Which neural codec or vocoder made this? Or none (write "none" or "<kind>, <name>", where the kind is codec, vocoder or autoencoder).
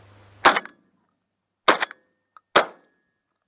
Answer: none